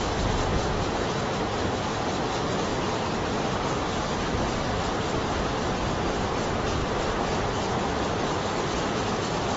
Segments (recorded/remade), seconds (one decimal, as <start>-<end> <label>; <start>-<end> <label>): 0.0-0.5 recorded; 0.5-1.3 remade; 1.3-9.6 recorded

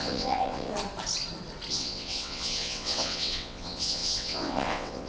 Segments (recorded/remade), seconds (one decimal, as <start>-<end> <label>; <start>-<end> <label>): 0.0-0.7 remade; 0.7-1.7 recorded; 1.7-5.1 remade

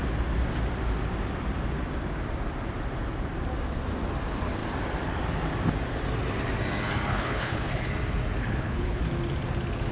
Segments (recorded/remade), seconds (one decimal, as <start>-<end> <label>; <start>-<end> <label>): 0.0-7.1 recorded; 7.1-7.9 remade; 7.9-8.4 recorded; 8.4-9.0 remade; 9.0-9.9 recorded

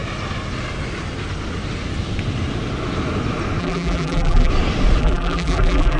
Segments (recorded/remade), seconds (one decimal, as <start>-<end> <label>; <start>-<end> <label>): 0.0-3.6 recorded; 3.6-4.5 remade; 4.5-5.0 recorded; 5.0-6.0 remade

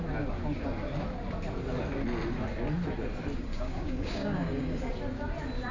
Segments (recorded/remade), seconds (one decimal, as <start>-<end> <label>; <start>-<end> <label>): 0.0-3.4 recorded; 3.4-4.9 remade; 4.9-5.7 recorded